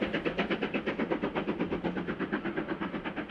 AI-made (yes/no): no